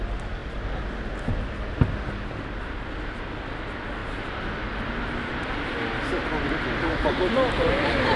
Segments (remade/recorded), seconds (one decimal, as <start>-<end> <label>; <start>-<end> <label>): 0.0-8.2 recorded